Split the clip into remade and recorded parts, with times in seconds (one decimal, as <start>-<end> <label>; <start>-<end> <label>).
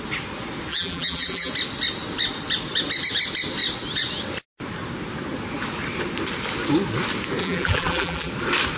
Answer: 0.0-0.7 recorded; 0.7-1.5 remade; 1.5-7.4 recorded; 7.4-8.3 remade; 8.3-8.8 recorded